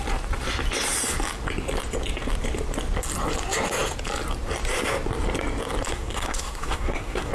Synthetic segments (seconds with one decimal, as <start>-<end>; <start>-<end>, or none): 5.9-7.3